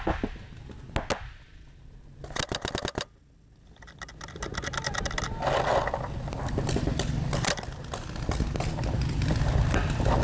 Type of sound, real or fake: real